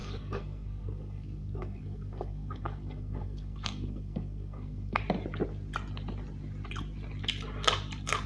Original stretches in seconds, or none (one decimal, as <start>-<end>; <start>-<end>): 5.0-8.3